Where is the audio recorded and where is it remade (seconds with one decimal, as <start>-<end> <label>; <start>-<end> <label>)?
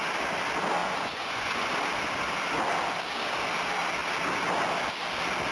0.0-0.8 recorded; 0.8-1.7 remade; 1.7-5.5 recorded